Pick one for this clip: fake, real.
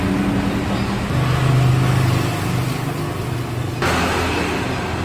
real